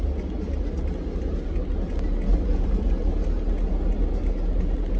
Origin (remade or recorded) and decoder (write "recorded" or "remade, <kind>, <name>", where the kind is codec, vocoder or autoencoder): recorded